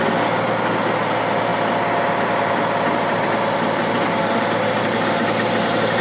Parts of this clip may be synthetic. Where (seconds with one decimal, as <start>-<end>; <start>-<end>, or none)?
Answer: none